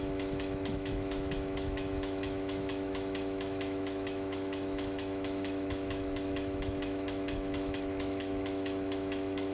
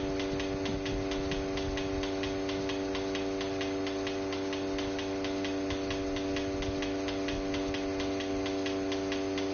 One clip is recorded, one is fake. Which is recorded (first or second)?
second